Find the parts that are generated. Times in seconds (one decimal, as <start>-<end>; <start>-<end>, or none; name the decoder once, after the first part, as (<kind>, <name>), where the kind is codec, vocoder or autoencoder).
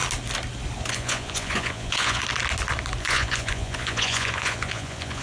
0.9-2.2 (vocoder, Vocos); 3.0-5.2